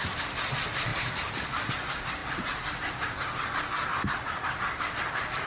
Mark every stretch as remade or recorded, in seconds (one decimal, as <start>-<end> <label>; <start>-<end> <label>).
0.0-0.9 recorded; 0.9-1.7 remade; 1.7-5.5 recorded